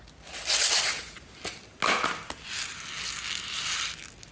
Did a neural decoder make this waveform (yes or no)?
no